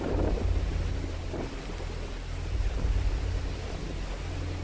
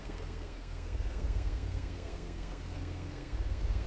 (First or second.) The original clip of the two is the first